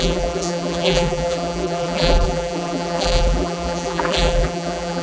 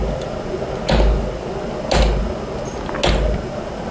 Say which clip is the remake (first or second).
first